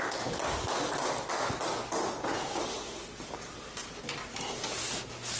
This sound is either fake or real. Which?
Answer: real